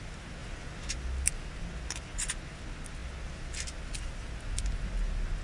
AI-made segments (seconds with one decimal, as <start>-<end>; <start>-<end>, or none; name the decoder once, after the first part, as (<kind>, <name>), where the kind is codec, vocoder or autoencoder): none